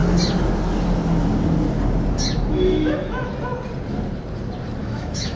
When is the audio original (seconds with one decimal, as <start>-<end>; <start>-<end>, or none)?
0.0-2.5; 3.3-4.8